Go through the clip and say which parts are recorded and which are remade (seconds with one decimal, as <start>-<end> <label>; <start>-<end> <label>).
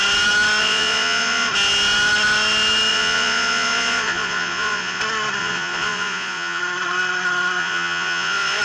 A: 0.0-0.6 recorded; 0.6-1.5 remade; 1.5-2.9 recorded; 2.9-5.0 remade; 5.0-5.4 recorded; 5.4-6.6 remade; 6.6-7.6 recorded; 7.6-8.6 remade